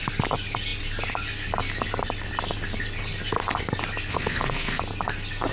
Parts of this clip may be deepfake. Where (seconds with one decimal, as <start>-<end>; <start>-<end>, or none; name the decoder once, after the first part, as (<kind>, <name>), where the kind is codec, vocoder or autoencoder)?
4.1-4.8 (codec, SNAC)

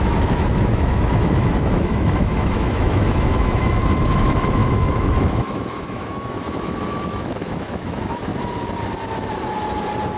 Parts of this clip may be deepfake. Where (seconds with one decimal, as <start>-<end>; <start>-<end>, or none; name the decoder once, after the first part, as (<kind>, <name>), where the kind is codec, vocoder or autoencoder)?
0.0-8.3 (autoencoder, DAC-VAE)

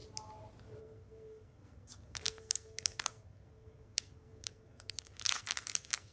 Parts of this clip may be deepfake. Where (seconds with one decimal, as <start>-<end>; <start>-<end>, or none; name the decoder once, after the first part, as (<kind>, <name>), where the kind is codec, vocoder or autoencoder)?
0.8-6.1 (codec, SNAC)

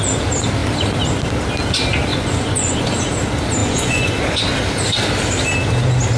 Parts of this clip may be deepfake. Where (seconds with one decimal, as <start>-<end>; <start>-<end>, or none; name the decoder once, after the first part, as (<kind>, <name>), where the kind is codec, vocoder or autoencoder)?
2.1-2.9 (vocoder, Vocos); 3.6-4.1